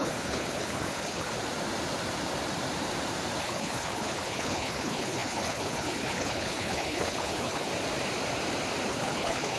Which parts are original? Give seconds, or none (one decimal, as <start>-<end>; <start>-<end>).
1.3-3.4; 7.7-8.9